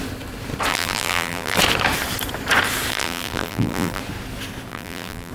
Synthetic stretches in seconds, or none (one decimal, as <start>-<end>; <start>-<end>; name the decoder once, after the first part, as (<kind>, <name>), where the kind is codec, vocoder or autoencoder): 0.7-1.6 (vocoder, BigVGAN v2); 2.9-4.0; 4.7-5.3

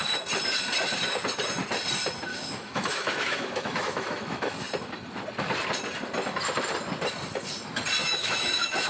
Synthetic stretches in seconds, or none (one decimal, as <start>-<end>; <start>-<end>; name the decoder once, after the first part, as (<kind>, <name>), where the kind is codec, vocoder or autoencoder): 2.3-4.5 (autoencoder, DAC-VAE); 8.0-8.9

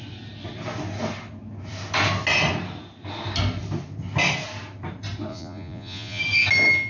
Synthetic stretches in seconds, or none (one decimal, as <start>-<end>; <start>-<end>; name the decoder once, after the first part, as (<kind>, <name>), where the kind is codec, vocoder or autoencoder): 5.3-6.2 (vocoder, Vocos)